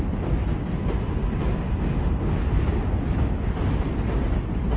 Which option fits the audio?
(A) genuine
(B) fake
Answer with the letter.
A